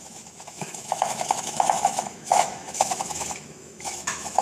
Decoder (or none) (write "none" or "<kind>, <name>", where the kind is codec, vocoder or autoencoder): autoencoder, DAC-VAE